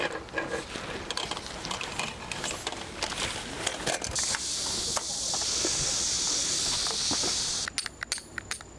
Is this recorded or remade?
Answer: recorded